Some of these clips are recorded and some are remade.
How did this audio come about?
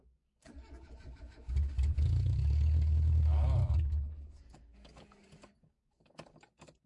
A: remade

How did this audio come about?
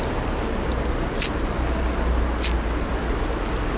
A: recorded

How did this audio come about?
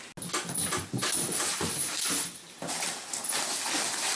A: recorded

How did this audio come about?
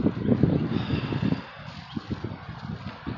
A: recorded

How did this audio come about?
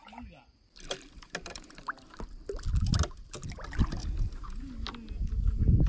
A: recorded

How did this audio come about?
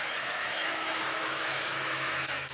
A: remade